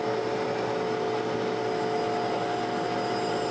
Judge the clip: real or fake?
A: real